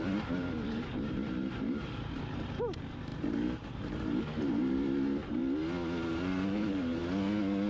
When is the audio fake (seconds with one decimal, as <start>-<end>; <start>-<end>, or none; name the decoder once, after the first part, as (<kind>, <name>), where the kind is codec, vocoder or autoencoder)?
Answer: 0.0-5.4 (vocoder, BigVGAN v2); 6.1-7.0